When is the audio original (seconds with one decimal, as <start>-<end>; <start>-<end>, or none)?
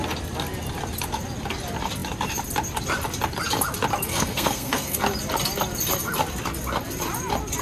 0.0-4.1; 5.0-7.6